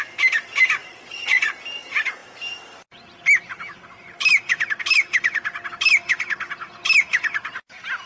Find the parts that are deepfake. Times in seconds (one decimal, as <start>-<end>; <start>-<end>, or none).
0.8-1.5